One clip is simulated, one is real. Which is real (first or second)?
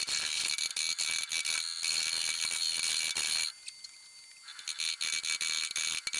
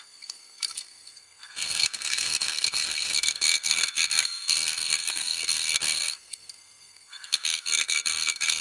first